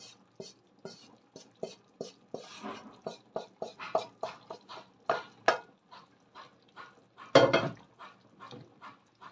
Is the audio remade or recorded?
recorded